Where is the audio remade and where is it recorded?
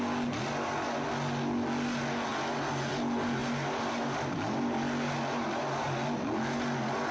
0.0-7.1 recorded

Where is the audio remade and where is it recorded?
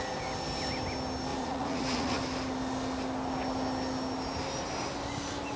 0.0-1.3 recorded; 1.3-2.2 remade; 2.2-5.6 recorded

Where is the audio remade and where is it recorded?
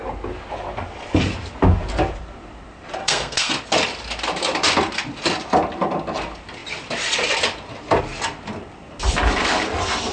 0.0-3.0 recorded; 3.0-3.5 remade; 3.5-10.1 recorded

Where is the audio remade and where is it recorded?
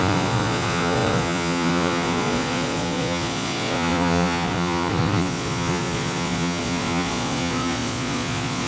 0.0-8.7 remade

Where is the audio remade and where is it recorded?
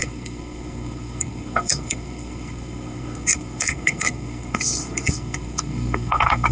0.0-6.5 remade